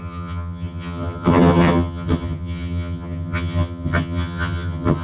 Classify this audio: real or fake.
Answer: fake